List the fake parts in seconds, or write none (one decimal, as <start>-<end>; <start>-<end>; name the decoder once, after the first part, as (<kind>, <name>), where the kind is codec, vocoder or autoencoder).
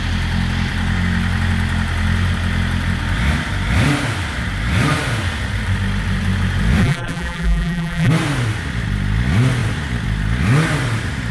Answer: 6.8-8.1 (vocoder, BigVGAN v2)